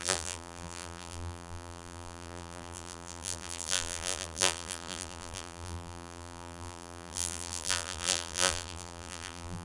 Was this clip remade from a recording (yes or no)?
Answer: yes